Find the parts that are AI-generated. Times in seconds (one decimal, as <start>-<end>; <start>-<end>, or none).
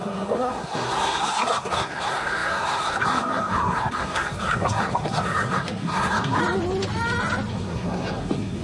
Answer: 0.0-6.4; 7.5-8.6